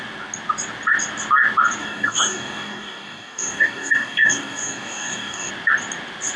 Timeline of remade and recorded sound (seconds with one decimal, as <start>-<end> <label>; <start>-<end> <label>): 0.0-1.8 recorded; 1.8-5.5 remade; 5.5-6.4 recorded